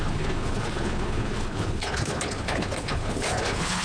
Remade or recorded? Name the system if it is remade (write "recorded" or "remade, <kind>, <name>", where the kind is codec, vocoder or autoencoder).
remade, codec, HILCodec